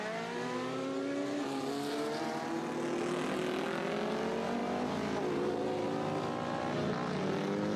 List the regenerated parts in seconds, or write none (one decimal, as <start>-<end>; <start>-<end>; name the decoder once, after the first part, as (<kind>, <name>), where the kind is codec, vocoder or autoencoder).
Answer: none